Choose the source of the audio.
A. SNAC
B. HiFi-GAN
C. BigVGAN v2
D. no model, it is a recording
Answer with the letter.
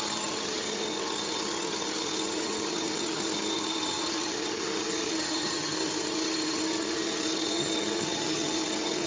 B